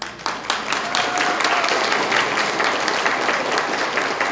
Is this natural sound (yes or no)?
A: yes